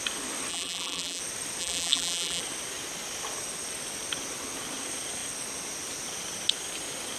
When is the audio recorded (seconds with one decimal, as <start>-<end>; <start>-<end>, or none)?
0.0-0.5; 1.2-1.6; 2.4-7.2

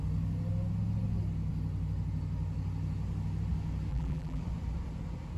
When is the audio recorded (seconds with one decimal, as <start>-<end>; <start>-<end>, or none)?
0.0-3.9; 4.4-5.4

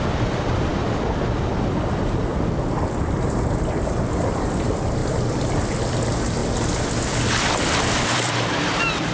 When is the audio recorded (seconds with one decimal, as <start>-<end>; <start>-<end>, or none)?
0.7-1.9; 2.3-3.0; 6.4-7.7

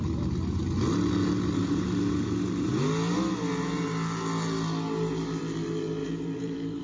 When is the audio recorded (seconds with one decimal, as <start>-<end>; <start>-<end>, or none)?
0.0-6.0

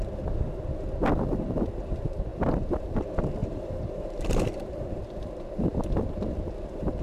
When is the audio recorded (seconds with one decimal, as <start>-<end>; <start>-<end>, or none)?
0.0-3.4; 5.3-7.0